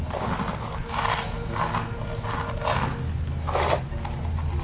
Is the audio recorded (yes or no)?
yes